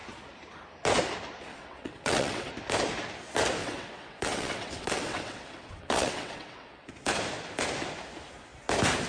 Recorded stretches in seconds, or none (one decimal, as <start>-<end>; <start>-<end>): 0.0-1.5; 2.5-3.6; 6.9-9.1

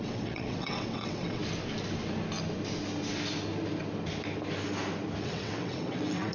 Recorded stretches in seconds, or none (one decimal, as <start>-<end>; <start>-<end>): 1.4-5.2

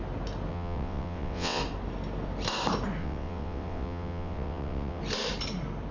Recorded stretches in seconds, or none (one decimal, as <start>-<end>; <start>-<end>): 0.0-0.5; 1.6-3.0; 5.0-5.9

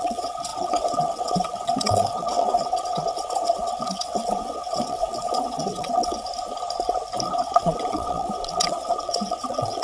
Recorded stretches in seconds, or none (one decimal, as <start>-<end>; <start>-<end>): 6.3-7.3